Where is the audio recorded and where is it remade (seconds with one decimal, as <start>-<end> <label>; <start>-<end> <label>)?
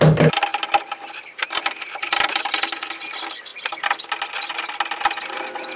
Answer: 0.0-0.5 recorded; 0.5-2.9 remade; 2.9-5.8 recorded